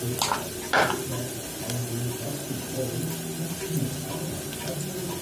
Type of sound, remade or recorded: recorded